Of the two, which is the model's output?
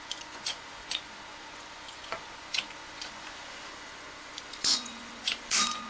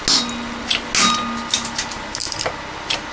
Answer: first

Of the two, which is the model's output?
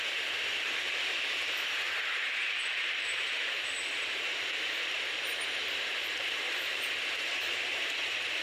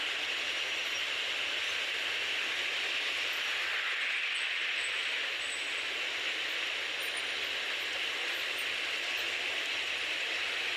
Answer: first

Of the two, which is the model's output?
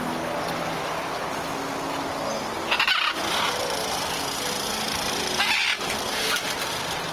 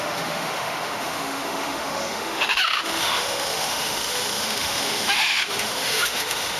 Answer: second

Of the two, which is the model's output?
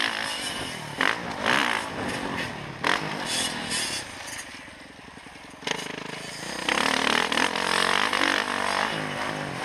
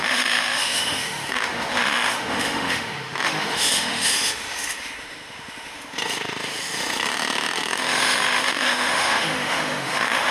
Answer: second